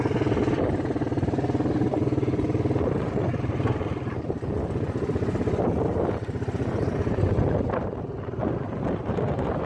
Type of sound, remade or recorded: recorded